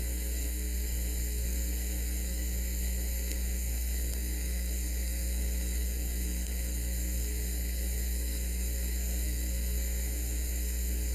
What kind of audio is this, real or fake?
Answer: fake